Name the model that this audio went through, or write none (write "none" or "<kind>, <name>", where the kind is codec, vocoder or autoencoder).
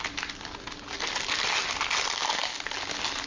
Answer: none